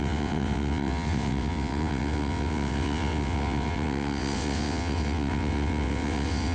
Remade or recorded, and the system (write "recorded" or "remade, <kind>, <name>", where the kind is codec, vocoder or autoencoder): remade, vocoder, WaveNeXt